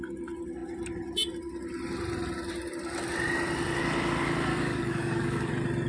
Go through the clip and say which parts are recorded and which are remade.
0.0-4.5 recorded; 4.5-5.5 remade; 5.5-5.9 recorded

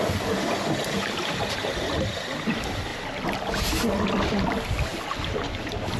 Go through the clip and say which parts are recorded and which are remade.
0.0-6.0 recorded

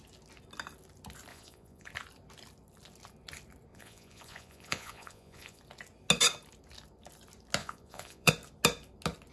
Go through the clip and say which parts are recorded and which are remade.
0.0-1.3 recorded; 1.3-1.9 remade; 1.9-3.7 recorded; 3.7-5.6 remade; 5.6-7.6 recorded; 7.6-8.3 remade; 8.3-9.3 recorded

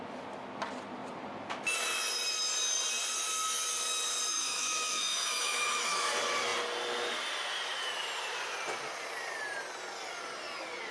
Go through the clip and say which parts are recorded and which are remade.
0.0-4.3 recorded; 4.3-6.1 remade; 6.1-10.9 recorded

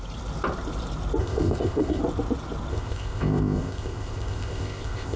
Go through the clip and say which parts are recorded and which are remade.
0.0-1.2 recorded; 1.2-2.0 remade; 2.0-2.7 recorded; 2.7-5.2 remade

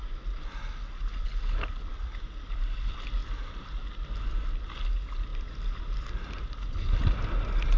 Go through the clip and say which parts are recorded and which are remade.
0.0-7.8 recorded

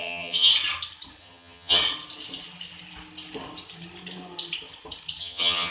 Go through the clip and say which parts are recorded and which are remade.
0.0-0.5 remade; 0.5-1.2 recorded; 1.2-1.8 remade; 1.8-5.2 recorded; 5.2-5.7 remade